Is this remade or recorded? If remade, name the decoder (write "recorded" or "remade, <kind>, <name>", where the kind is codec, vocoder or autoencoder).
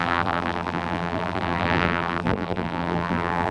remade, vocoder, BigVGAN v2